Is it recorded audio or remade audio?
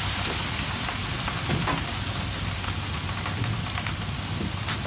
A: recorded